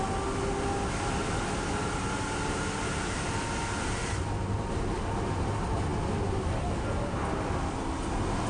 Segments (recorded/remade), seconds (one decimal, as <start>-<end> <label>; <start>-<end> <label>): 0.0-8.5 recorded